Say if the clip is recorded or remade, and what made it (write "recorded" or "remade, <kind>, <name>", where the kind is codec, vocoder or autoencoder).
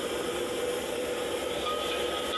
recorded